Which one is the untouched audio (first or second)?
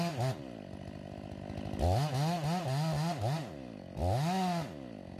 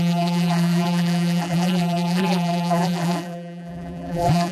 first